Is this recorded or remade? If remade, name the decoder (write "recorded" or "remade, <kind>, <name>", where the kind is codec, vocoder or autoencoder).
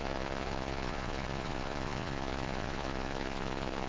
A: remade, vocoder, Vocos